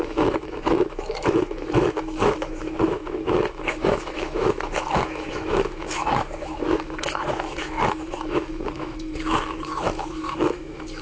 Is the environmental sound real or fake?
fake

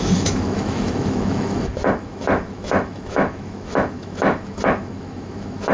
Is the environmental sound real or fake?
fake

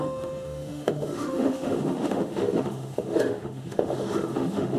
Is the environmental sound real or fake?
fake